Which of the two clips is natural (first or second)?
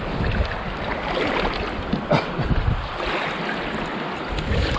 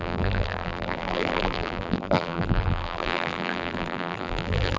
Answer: first